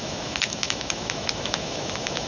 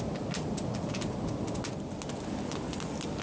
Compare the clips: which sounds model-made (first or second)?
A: first